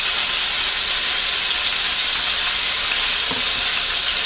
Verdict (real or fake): real